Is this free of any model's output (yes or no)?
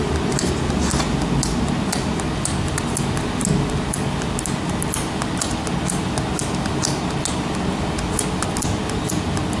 yes